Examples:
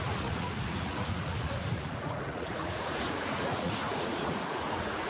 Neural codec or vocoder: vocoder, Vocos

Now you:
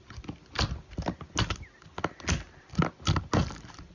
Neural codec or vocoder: none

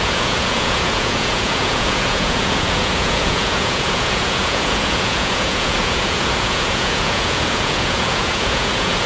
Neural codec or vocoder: vocoder, Vocos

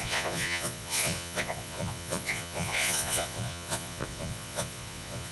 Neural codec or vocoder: vocoder, Vocos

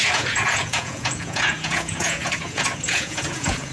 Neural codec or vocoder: vocoder, Vocos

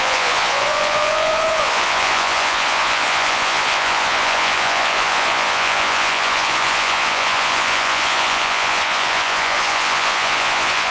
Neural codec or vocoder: vocoder, Vocos